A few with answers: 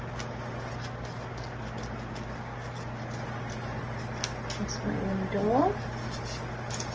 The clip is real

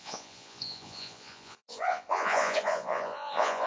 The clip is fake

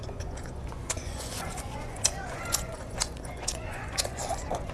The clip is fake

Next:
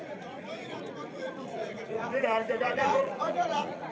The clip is fake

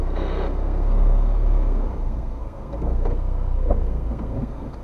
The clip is fake